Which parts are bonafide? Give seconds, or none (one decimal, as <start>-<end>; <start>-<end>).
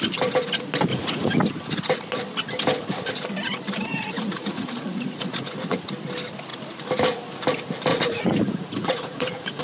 0.0-0.9; 1.4-3.9; 5.8-7.9